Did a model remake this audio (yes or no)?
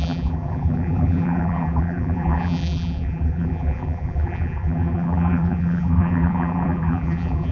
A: yes